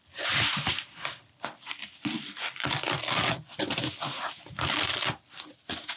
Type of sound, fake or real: fake